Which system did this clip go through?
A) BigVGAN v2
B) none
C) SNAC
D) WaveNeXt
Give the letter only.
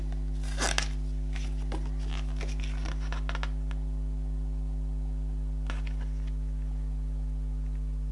B